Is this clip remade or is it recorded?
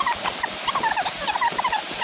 remade